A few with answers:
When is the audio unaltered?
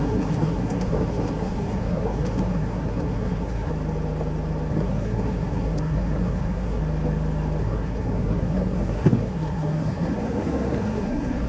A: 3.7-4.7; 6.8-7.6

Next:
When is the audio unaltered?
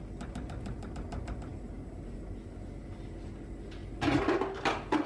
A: 0.0-5.1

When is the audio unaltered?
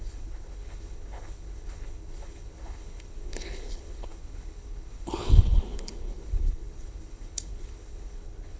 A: none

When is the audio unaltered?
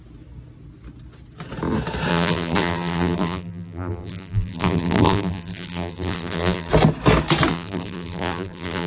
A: 0.0-2.1; 6.7-7.5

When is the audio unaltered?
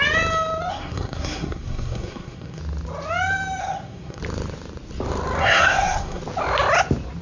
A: 0.0-0.7; 2.6-3.6; 4.2-5.4; 6.2-7.2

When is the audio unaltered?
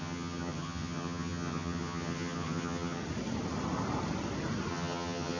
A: 3.0-4.7